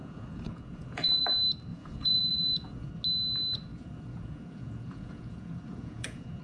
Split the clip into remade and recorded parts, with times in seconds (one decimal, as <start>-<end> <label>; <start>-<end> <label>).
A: 0.0-1.2 remade; 1.2-1.7 recorded; 1.7-2.9 remade; 2.9-3.7 recorded; 3.7-6.4 remade